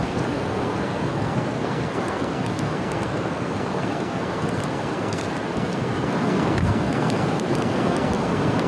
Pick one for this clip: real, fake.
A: fake